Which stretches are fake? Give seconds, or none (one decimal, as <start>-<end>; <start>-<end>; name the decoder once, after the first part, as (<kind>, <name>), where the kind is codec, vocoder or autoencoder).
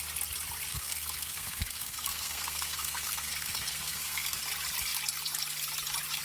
0.7-4.4 (codec, SNAC)